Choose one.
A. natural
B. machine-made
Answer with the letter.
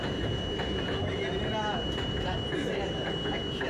A